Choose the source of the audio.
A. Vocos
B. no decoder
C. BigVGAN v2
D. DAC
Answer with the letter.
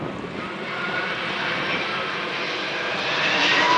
C